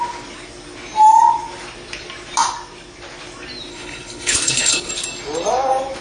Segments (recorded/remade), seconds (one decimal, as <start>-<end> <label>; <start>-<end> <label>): 0.0-3.7 recorded; 3.7-4.9 remade; 4.9-6.0 recorded